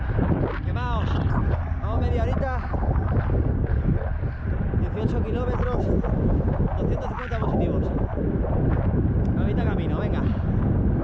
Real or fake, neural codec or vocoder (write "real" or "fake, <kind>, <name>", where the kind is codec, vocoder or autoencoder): real